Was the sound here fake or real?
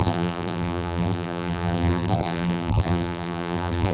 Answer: fake